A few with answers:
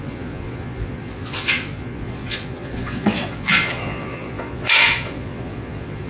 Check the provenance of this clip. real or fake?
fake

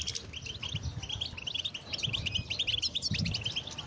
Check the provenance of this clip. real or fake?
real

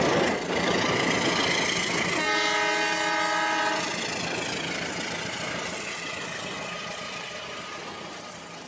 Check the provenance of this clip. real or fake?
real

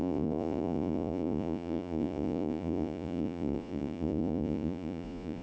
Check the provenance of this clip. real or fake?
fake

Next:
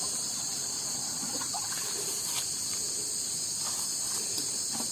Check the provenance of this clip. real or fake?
real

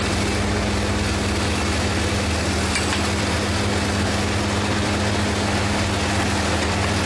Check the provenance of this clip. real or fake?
real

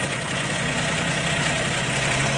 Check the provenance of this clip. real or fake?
fake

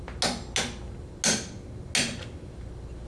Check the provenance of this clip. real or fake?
real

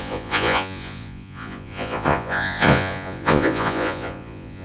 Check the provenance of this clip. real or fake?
fake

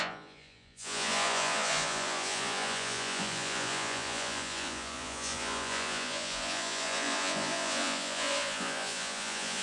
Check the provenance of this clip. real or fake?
fake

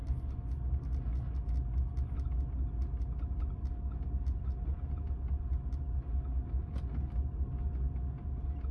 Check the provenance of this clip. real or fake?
real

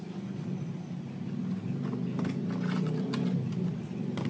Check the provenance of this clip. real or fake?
real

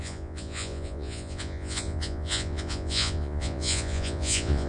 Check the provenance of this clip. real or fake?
fake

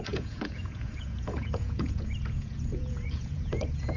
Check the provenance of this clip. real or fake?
fake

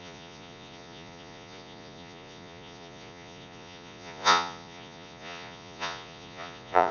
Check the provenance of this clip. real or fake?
fake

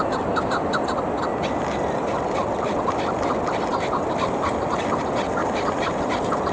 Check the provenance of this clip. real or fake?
real